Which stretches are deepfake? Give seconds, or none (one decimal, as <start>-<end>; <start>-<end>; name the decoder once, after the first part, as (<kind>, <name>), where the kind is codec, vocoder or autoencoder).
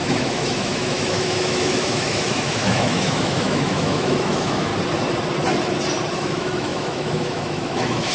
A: 0.0-4.7 (autoencoder, DAC-VAE); 6.2-8.1